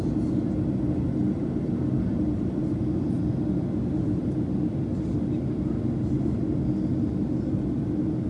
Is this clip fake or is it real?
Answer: real